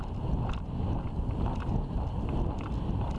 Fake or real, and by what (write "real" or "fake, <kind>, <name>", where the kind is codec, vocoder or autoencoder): real